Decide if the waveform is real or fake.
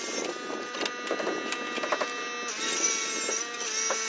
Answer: real